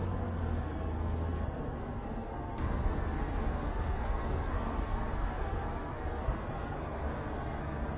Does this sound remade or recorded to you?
remade